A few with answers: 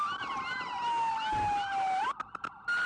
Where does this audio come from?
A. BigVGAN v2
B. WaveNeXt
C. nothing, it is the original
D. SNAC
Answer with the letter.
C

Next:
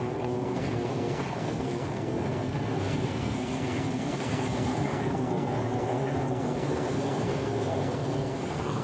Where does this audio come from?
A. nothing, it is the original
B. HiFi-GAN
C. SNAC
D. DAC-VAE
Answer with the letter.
C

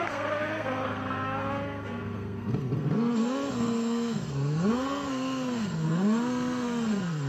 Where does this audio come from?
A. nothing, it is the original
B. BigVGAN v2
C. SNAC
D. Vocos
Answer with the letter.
C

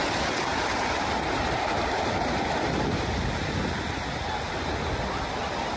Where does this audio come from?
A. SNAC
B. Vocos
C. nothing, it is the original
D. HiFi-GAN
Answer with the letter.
C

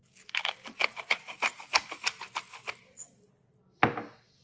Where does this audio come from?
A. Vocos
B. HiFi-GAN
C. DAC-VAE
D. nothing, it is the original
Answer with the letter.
D